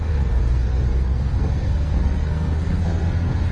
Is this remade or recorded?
remade